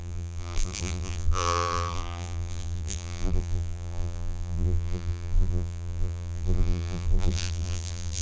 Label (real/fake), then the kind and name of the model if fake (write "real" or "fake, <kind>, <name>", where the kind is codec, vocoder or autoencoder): fake, vocoder, BigVGAN v2